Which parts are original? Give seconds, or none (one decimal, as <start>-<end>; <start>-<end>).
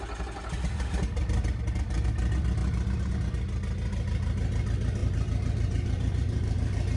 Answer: 0.0-5.0